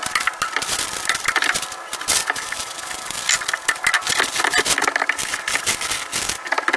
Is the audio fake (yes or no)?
no